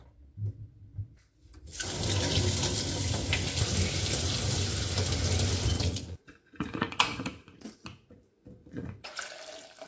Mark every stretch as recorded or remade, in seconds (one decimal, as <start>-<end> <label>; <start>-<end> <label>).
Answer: 0.0-5.7 recorded; 5.7-8.2 remade; 8.2-8.6 recorded; 8.6-9.2 remade; 9.2-9.9 recorded